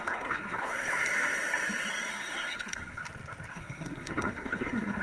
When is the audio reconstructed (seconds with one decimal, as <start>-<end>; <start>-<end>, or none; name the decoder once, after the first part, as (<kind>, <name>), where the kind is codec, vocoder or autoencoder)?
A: 0.0-0.9 (codec, SNAC); 2.1-3.0; 3.5-5.0